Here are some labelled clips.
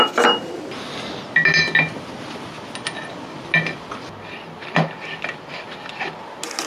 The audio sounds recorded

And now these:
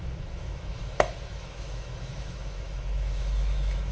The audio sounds remade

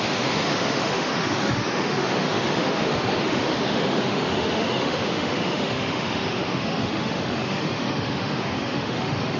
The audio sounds remade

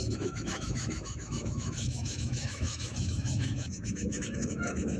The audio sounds remade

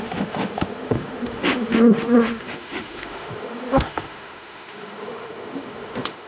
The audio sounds remade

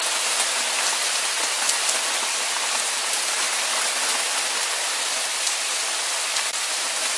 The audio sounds recorded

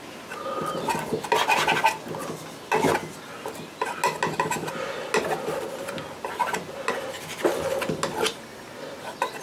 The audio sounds recorded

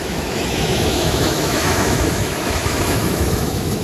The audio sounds remade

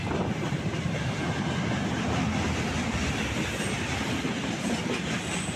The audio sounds recorded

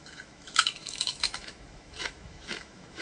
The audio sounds remade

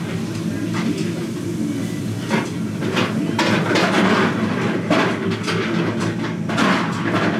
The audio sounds recorded